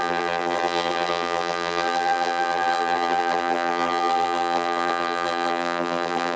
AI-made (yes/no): yes